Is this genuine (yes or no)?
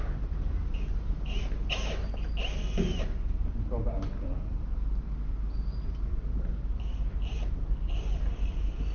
yes